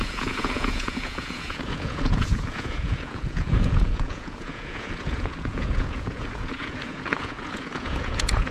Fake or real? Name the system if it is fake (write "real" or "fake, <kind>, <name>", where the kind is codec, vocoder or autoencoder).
fake, vocoder, Vocos